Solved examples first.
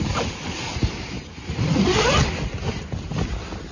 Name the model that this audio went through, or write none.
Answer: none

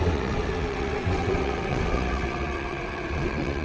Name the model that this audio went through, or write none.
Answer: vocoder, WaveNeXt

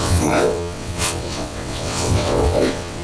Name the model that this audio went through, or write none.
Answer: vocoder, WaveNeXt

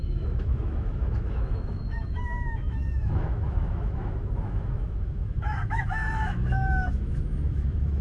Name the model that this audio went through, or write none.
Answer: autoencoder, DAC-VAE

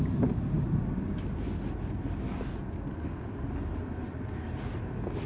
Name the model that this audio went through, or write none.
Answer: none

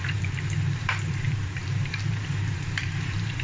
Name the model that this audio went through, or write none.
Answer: vocoder, BigVGAN v2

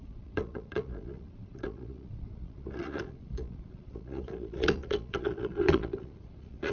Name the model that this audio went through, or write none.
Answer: vocoder, Vocos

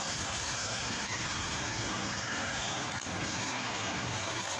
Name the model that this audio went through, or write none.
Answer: codec, SNAC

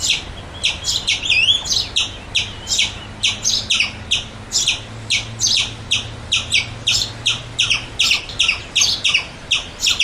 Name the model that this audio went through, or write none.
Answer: none